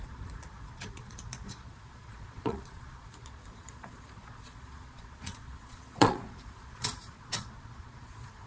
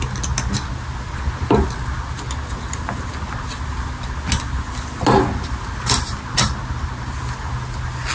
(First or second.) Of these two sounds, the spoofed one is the first